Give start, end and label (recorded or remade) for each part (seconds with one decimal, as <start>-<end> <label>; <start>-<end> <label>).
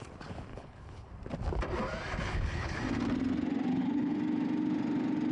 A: 0.0-0.5 recorded; 0.5-1.1 remade; 1.1-2.2 recorded; 2.2-2.8 remade; 2.8-3.7 recorded; 3.7-4.2 remade; 4.2-5.3 recorded